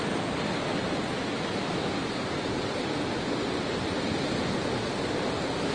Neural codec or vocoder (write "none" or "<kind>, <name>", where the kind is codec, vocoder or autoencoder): none